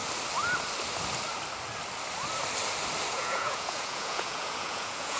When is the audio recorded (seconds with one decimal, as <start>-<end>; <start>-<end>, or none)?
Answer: 0.0-3.1